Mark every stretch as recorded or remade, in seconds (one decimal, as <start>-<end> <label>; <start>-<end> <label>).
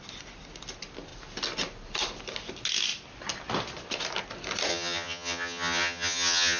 0.0-4.7 recorded; 4.7-6.6 remade